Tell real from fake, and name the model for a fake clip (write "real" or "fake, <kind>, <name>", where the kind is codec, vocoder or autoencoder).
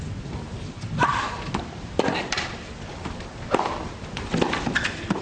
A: fake, vocoder, BigVGAN v2